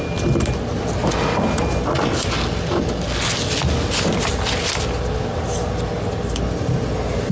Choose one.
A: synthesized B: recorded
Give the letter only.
B